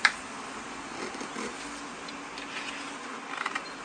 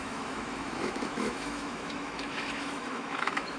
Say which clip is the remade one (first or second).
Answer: second